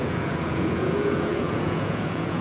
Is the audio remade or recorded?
remade